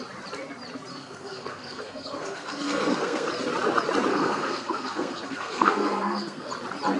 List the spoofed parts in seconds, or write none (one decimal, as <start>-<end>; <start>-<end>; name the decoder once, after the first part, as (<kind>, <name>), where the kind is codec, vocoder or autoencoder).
0.9-3.3 (codec, SNAC); 4.1-6.5